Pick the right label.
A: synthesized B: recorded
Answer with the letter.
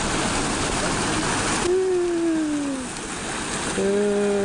B